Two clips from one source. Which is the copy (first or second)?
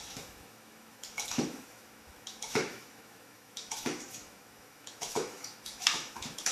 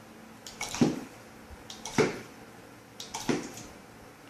first